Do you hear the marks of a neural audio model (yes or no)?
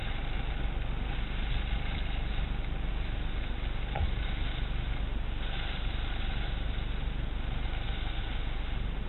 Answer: no